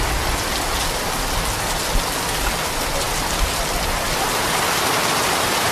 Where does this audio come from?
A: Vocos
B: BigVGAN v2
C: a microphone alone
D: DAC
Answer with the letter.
C